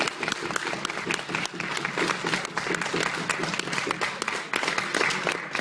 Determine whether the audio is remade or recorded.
recorded